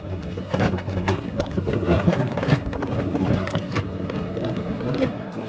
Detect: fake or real fake